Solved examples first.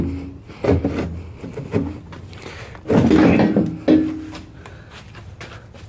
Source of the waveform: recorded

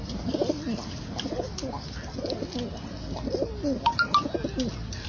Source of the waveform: recorded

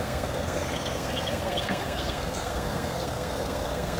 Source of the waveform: remade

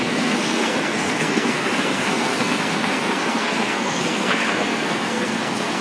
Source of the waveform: remade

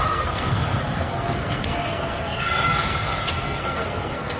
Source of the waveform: remade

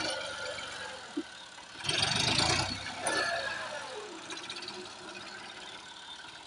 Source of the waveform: recorded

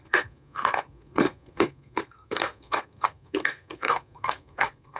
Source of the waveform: remade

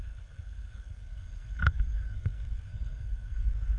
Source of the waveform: remade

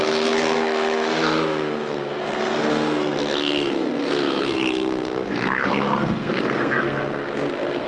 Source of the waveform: remade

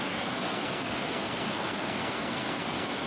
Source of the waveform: remade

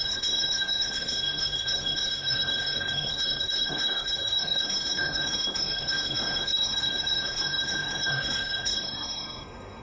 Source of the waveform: remade